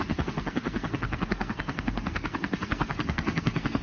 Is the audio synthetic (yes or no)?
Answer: yes